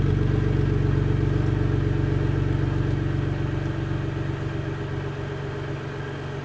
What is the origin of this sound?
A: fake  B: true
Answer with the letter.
B